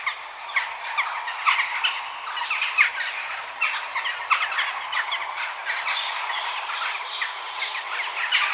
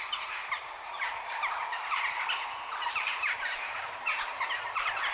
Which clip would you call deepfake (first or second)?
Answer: second